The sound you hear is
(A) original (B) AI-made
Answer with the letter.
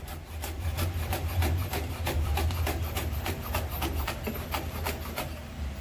B